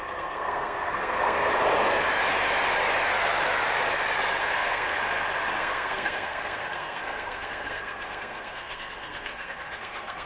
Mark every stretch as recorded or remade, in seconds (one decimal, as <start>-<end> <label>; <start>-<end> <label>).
0.0-1.5 remade; 1.5-4.4 recorded; 4.4-5.0 remade; 5.0-5.6 recorded; 5.6-10.3 remade